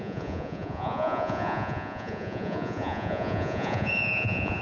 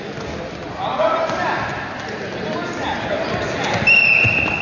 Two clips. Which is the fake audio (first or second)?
first